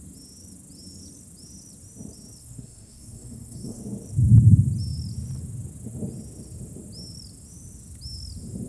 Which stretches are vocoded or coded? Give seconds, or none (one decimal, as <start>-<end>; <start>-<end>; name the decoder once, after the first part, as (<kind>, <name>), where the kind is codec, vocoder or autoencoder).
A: 2.4-3.8 (codec, SNAC)